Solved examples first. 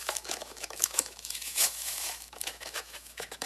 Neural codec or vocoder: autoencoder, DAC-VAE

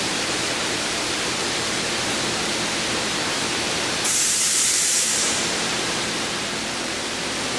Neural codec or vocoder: vocoder, BigVGAN v2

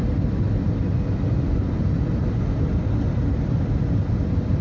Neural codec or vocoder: none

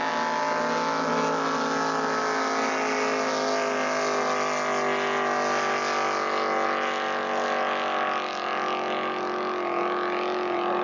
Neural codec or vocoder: none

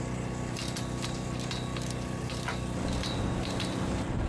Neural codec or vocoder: none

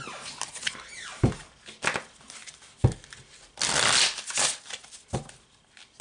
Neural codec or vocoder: none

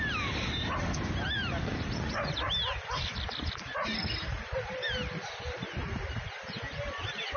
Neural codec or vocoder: none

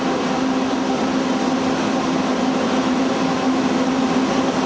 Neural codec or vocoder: none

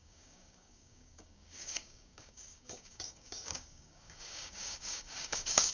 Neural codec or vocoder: codec, DAC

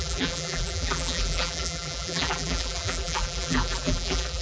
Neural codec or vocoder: vocoder, BigVGAN v2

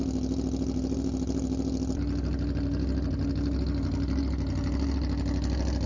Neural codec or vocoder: none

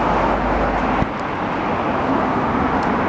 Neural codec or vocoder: none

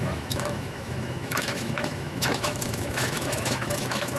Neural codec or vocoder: autoencoder, DAC-VAE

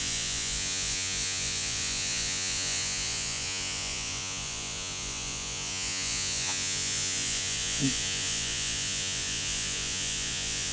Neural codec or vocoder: vocoder, Vocos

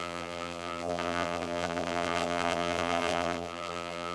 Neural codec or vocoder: vocoder, BigVGAN v2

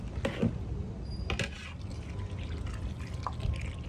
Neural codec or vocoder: none